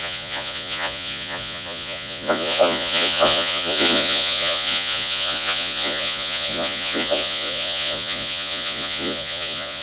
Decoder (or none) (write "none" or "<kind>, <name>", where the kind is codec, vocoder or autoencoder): vocoder, Vocos